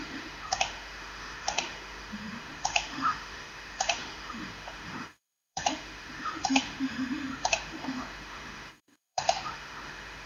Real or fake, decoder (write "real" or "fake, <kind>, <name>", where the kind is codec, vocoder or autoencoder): fake, autoencoder, DAC-VAE